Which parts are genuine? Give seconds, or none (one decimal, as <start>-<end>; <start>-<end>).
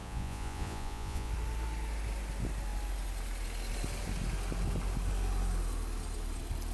1.3-6.7